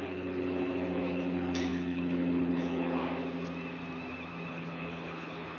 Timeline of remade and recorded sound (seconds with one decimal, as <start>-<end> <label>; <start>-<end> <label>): 0.0-3.0 remade; 3.0-4.5 recorded; 4.5-5.6 remade